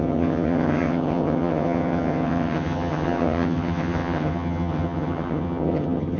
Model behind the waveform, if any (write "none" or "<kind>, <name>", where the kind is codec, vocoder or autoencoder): vocoder, HiFi-GAN